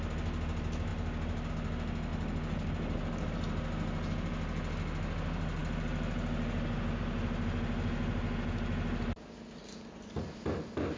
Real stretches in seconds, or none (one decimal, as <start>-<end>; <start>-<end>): 0.0-11.0